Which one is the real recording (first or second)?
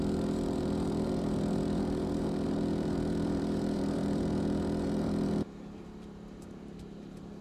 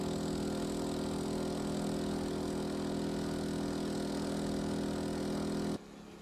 second